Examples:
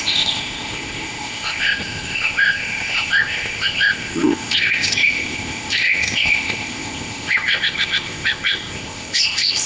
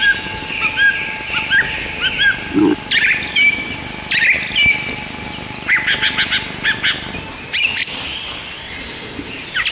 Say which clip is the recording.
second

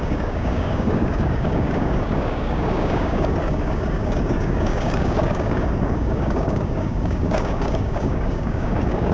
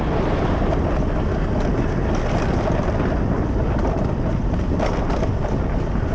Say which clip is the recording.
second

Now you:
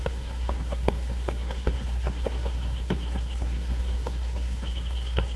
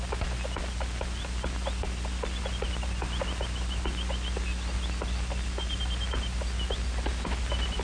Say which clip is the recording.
second